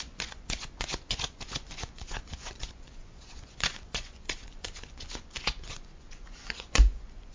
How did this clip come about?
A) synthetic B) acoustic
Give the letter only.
A